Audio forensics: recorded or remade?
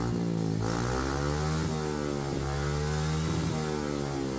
recorded